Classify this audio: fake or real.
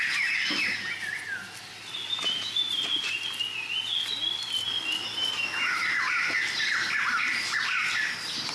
real